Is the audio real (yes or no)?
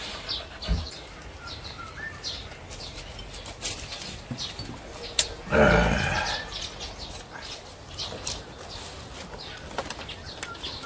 yes